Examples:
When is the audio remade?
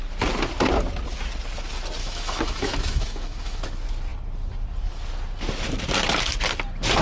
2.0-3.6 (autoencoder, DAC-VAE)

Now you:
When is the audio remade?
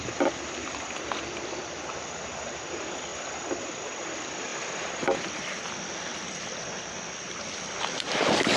none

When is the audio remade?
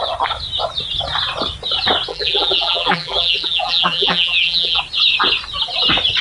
2.1-4.8 (vocoder, BigVGAN v2)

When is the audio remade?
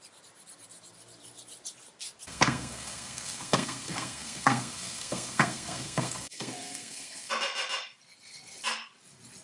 2.3-7.3 (codec, SNAC)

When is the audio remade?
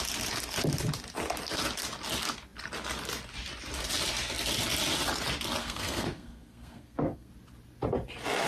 5.6-7.3 (codec, SNAC)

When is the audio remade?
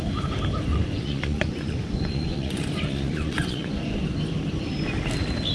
0.7-4.0 (vocoder, Vocos)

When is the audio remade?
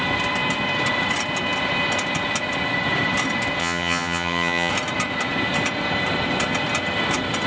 3.6-4.7 (vocoder, HiFi-GAN)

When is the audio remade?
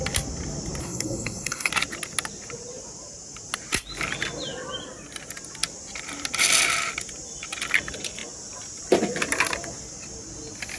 0.8-1.7 (codec, SNAC)